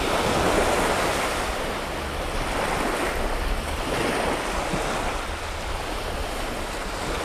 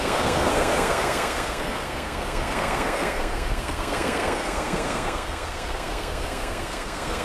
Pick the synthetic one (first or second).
second